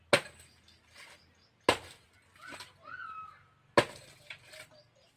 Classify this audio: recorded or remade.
recorded